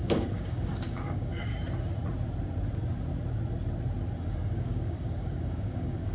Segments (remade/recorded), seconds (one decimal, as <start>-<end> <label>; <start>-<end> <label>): 0.0-1.5 remade; 1.5-4.3 recorded; 4.3-6.1 remade